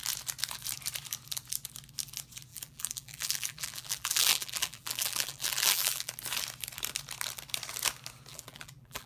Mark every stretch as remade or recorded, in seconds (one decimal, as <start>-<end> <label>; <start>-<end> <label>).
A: 0.0-2.5 recorded; 2.5-6.1 remade; 6.1-8.3 recorded; 8.3-9.1 remade